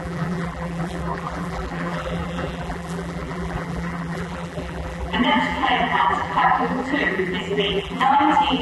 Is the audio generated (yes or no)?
yes